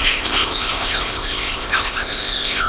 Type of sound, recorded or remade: remade